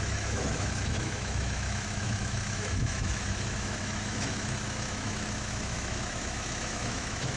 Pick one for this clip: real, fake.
fake